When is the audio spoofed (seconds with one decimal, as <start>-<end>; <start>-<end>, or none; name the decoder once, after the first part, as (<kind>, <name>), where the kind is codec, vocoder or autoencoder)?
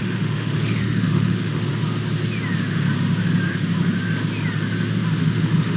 0.0-1.7 (autoencoder, DAC-VAE); 5.2-5.8